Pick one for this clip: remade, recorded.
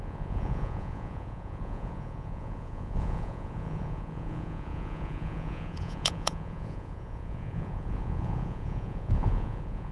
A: remade